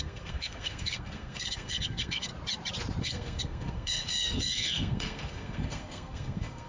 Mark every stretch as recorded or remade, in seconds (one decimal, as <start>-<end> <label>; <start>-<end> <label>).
0.0-2.3 remade; 2.3-3.0 recorded; 3.0-6.7 remade

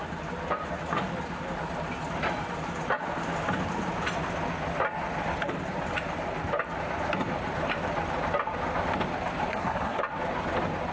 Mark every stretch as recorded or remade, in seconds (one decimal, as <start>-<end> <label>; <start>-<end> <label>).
0.0-9.5 recorded; 9.5-10.0 remade; 10.0-10.9 recorded